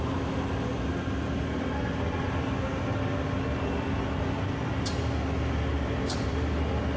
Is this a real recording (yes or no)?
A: yes